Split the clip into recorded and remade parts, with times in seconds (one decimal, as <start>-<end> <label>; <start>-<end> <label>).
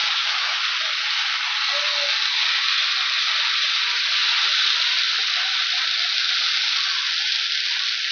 0.0-0.6 remade; 0.6-8.1 recorded